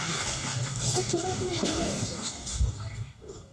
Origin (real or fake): fake